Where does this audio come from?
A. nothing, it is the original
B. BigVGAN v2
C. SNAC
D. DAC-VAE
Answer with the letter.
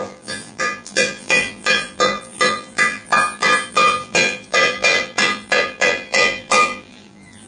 B